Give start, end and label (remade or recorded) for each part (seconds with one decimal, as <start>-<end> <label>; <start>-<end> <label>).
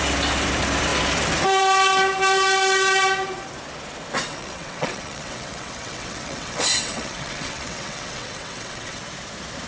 0.0-4.3 recorded; 4.3-9.0 remade; 9.0-9.7 recorded